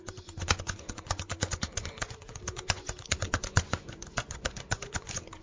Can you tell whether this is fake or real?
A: fake